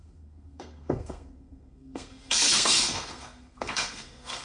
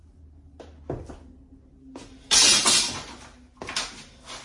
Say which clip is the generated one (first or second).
first